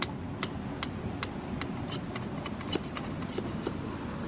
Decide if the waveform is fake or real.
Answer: real